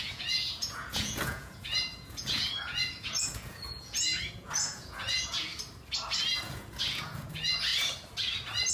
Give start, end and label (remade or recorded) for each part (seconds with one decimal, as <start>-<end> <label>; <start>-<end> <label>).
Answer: 0.0-5.5 remade; 5.5-6.4 recorded; 6.4-7.7 remade; 7.7-8.7 recorded